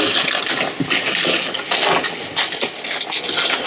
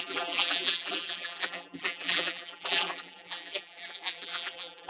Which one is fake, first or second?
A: second